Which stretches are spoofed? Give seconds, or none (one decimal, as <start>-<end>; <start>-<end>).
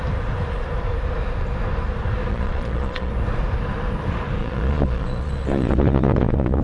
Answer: 2.3-3.1; 4.4-6.6